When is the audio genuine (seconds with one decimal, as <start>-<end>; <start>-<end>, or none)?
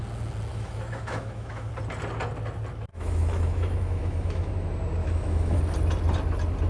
0.0-0.5; 1.7-2.9; 4.5-5.0; 5.6-6.7